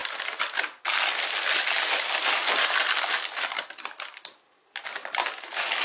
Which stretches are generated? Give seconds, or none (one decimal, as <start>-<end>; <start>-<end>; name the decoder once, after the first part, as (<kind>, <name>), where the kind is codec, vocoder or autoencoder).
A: none